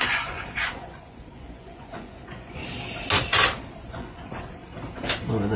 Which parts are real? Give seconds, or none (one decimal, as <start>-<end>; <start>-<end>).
2.6-3.8; 4.6-5.6